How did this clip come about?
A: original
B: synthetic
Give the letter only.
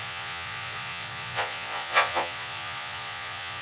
B